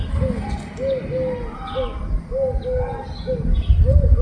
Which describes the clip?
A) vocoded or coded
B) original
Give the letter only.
B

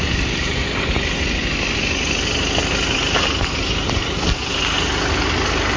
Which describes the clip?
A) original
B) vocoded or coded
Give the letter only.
A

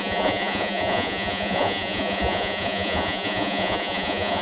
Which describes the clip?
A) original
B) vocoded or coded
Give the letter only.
B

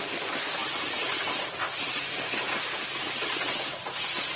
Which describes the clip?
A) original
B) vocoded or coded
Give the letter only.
A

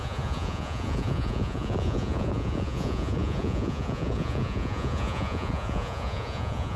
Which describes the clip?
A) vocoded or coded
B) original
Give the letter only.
A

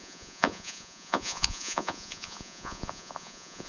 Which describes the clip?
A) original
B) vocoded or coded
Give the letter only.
B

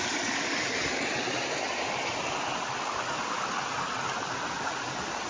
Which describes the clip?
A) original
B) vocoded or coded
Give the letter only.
A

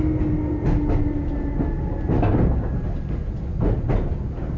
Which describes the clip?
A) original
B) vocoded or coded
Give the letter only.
A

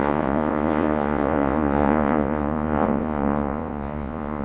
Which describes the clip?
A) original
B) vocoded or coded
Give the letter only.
B